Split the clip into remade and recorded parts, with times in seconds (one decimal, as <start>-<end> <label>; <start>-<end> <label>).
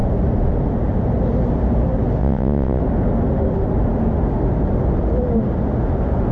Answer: 0.0-2.2 recorded; 2.2-2.8 remade; 2.8-6.3 recorded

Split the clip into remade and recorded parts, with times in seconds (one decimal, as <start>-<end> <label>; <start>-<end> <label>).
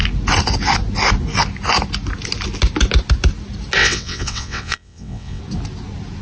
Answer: 0.0-3.8 recorded; 3.8-5.4 remade; 5.4-6.2 recorded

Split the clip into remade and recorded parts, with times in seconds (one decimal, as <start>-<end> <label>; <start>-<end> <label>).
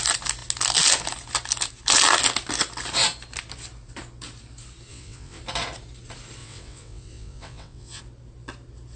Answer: 0.0-4.9 recorded; 4.9-5.4 remade; 5.4-6.4 recorded; 6.4-8.0 remade; 8.0-9.0 recorded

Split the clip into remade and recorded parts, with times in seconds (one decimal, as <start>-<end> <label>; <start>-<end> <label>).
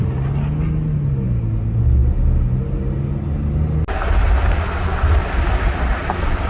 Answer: 0.0-6.5 recorded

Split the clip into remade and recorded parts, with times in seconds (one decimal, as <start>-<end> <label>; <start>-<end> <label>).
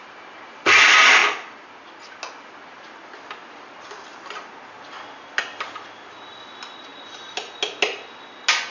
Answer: 0.0-8.7 recorded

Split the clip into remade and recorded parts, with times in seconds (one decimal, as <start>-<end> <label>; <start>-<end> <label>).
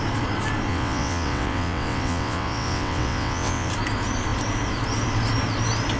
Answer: 0.0-0.7 recorded; 0.7-3.7 remade; 3.7-6.0 recorded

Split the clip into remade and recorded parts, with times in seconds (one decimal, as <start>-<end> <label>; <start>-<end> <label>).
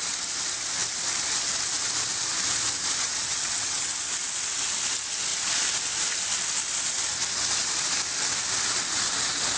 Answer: 0.0-3.0 recorded; 3.0-3.9 remade; 3.9-9.6 recorded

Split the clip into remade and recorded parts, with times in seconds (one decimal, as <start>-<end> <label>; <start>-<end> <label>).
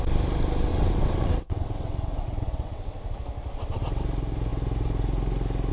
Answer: 0.0-0.7 recorded; 0.7-3.1 remade; 3.1-5.7 recorded